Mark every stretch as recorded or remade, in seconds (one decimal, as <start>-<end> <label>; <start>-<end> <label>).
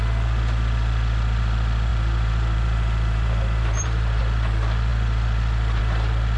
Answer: 0.0-1.9 recorded; 1.9-4.2 remade; 4.2-6.4 recorded